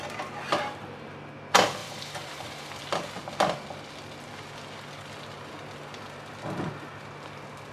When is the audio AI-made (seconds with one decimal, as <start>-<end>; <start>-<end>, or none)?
1.8-2.8